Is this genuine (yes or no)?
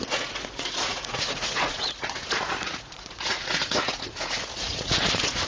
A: no